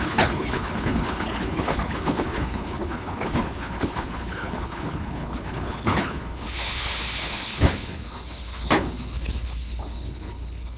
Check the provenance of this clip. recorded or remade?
remade